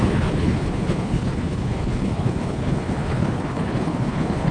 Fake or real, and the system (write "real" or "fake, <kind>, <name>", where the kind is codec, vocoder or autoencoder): fake, codec, HILCodec